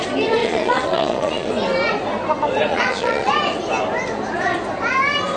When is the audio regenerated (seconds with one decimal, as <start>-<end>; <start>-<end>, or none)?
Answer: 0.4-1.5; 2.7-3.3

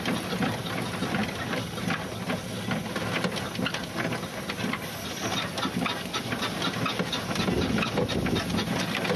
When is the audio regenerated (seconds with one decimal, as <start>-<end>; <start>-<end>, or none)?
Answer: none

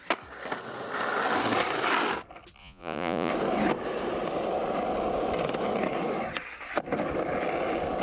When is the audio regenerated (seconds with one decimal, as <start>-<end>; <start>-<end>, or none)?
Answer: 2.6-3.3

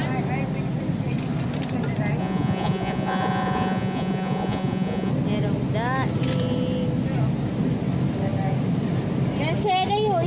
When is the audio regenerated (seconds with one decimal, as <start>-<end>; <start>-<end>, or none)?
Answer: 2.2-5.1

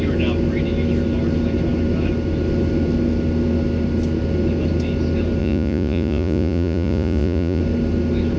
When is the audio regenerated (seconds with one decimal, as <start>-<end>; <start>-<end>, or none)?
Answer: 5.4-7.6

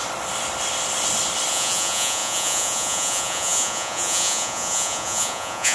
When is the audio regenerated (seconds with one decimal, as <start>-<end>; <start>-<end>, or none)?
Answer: 1.5-5.7

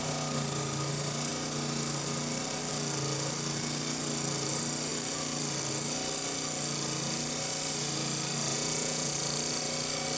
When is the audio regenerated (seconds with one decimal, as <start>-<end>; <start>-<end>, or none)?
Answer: 8.5-9.1

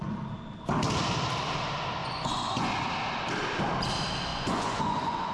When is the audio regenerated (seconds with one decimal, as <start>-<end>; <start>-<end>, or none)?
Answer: 2.0-2.7; 4.3-5.3